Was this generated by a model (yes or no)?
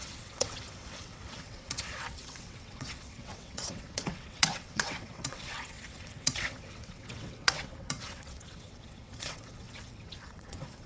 yes